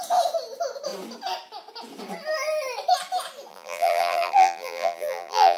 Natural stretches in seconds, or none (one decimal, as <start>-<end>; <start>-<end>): 0.0-3.5